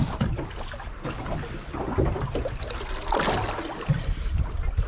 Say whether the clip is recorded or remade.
recorded